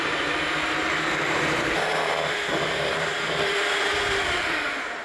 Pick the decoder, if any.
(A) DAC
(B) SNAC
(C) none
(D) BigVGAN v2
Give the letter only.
D